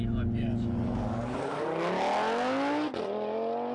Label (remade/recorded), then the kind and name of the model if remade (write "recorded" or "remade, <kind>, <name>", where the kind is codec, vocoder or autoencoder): recorded